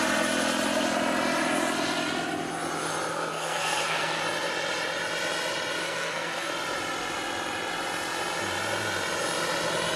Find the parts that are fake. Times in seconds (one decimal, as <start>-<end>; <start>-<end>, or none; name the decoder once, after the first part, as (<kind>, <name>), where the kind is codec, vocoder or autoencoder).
3.1-4.2 (codec, SNAC); 5.8-6.5